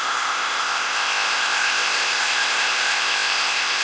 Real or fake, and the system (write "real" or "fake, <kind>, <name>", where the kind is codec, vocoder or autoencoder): fake, codec, ZipCodec